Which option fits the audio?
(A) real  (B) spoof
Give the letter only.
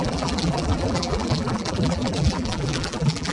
B